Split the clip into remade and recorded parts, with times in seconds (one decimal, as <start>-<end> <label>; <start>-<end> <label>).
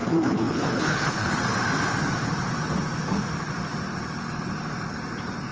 0.0-1.3 remade; 1.3-5.5 recorded